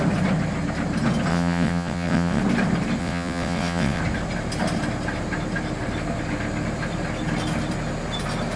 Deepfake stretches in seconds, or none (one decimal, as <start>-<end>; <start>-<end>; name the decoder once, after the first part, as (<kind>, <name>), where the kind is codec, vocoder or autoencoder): 1.3-2.4 (vocoder, WaveNeXt); 3.0-4.0